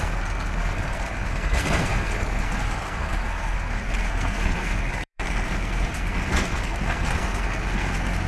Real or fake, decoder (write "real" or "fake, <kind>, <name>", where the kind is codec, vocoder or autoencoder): fake, codec, SNAC